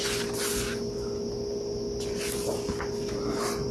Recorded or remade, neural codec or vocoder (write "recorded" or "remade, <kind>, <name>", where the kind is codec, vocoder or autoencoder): recorded